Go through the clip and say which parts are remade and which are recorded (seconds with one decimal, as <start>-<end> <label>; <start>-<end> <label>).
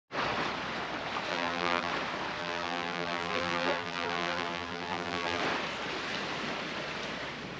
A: 0.0-1.3 recorded; 1.3-1.9 remade; 1.9-2.4 recorded; 2.4-5.4 remade; 5.4-7.6 recorded